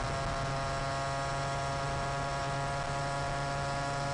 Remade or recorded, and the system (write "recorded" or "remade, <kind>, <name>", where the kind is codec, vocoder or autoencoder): recorded